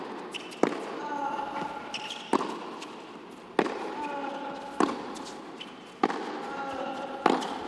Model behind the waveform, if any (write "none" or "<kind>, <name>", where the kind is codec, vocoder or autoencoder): none